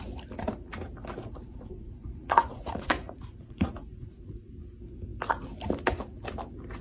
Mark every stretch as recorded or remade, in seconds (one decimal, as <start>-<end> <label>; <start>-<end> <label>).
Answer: 0.0-1.2 recorded; 1.2-4.5 remade; 4.5-6.8 recorded